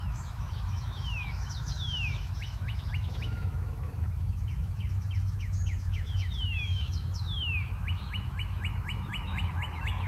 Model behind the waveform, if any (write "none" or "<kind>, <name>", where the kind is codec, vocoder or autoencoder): autoencoder, DAC-VAE